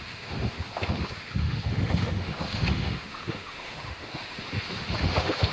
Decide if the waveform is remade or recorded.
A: remade